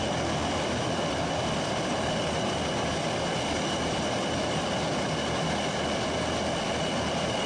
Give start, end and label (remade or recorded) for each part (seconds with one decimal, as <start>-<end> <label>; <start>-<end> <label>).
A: 0.0-0.4 recorded; 0.4-2.1 remade; 2.1-7.5 recorded